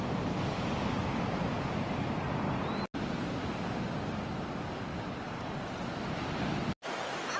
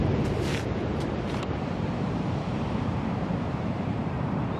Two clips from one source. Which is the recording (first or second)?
first